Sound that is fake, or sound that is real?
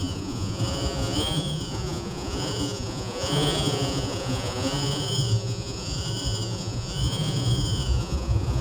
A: fake